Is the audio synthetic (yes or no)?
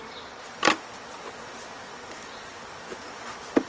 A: no